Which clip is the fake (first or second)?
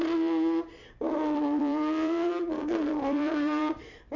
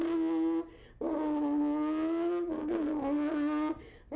first